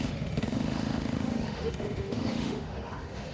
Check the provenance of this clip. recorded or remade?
remade